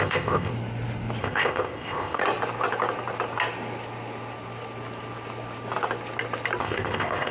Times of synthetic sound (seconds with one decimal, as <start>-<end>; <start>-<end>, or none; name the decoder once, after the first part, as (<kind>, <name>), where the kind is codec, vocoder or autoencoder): 0.0-0.5 (codec, ZipCodec); 1.2-2.2; 6.6-7.3